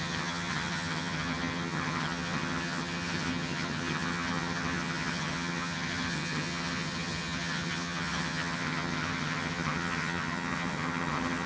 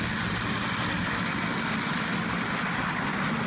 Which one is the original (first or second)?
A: second